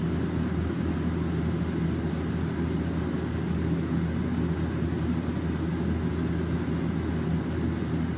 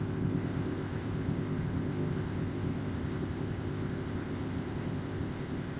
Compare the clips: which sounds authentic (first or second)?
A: first